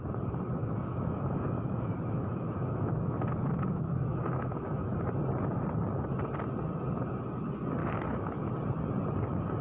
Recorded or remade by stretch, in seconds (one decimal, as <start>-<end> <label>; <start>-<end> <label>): 0.0-0.6 recorded; 0.6-5.1 remade; 5.1-7.8 recorded; 7.8-8.5 remade; 8.5-9.6 recorded